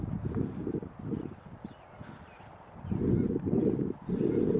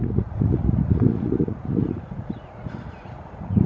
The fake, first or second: second